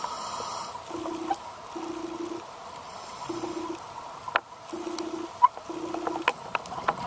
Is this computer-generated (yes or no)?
no